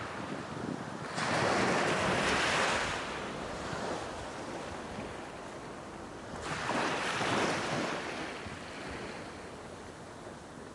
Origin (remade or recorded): recorded